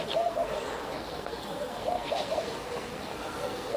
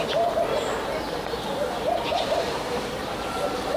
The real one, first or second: second